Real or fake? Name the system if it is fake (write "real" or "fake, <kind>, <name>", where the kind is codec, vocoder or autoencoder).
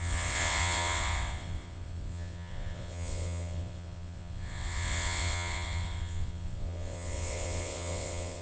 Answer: fake, vocoder, WaveNeXt